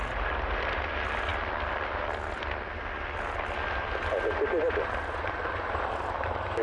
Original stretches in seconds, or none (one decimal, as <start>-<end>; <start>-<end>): 0.0-6.6